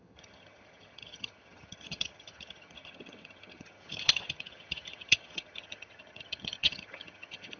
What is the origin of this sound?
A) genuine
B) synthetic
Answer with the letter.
B